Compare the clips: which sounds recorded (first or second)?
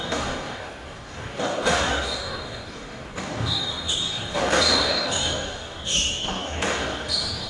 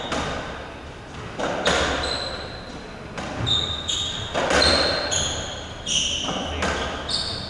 second